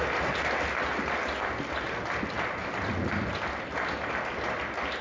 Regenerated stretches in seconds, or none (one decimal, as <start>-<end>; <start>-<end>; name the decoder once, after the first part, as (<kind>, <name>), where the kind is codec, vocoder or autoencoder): none